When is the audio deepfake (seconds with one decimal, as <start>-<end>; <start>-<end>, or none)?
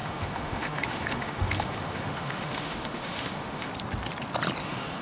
0.0-3.7; 4.6-5.0